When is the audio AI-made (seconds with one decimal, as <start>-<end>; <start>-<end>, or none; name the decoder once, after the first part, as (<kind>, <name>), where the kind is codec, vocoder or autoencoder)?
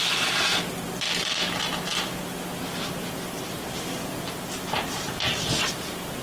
none